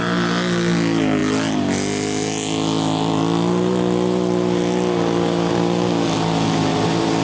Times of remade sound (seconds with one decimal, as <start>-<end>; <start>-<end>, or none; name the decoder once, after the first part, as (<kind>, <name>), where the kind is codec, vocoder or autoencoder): none